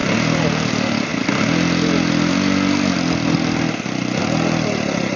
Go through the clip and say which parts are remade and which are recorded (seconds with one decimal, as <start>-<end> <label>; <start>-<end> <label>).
0.0-0.5 recorded; 0.5-1.1 remade; 1.1-4.2 recorded; 4.2-5.2 remade